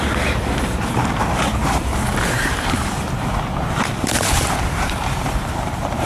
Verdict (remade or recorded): remade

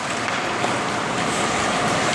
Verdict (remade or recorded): remade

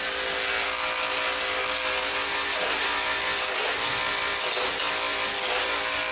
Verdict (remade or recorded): recorded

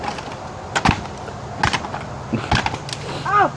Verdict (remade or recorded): recorded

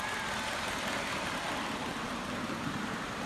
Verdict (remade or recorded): remade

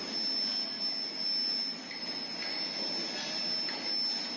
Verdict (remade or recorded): recorded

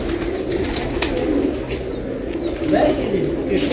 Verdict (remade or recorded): recorded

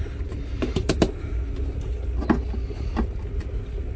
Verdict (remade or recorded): recorded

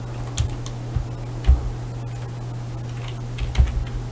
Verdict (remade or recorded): recorded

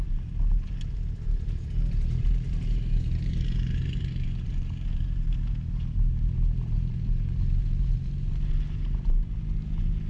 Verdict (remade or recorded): remade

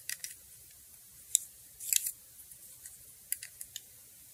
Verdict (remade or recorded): recorded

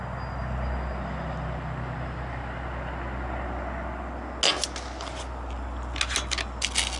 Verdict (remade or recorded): recorded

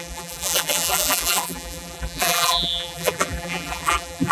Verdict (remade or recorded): remade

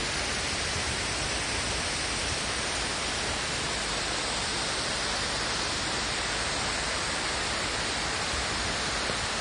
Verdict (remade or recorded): remade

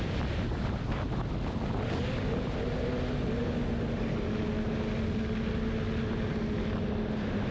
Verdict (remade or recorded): recorded